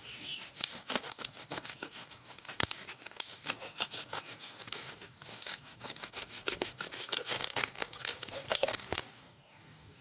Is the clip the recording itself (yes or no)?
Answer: no